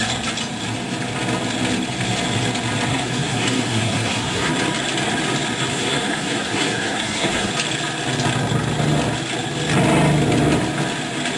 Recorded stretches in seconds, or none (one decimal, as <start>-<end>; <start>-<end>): 0.0-2.9; 4.5-5.7; 7.5-11.4